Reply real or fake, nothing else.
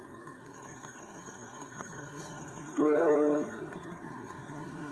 fake